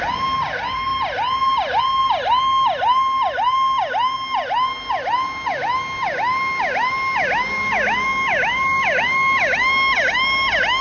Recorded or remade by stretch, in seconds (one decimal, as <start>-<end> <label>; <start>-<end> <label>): 0.0-10.8 recorded